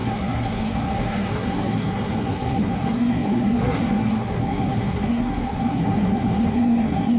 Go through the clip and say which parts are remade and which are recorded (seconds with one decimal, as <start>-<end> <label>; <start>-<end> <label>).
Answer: 0.0-7.2 remade